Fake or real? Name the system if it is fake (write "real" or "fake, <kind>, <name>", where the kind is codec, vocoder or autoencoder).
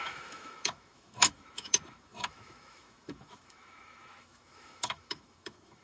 fake, autoencoder, DAC-VAE